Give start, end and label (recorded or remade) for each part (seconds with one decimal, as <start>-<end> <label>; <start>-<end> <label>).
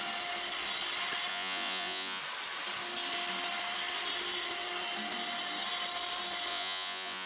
0.0-1.3 recorded; 1.3-2.2 remade; 2.2-6.5 recorded; 6.5-7.3 remade